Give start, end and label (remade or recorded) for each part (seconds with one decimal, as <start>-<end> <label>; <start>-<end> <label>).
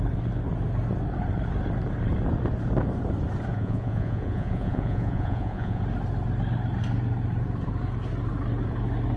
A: 0.0-3.5 recorded; 3.5-5.8 remade; 5.8-9.2 recorded